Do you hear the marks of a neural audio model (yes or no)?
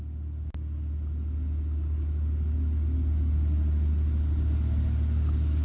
no